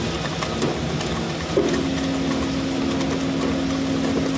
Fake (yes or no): no